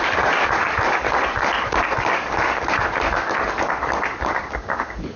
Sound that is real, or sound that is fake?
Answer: fake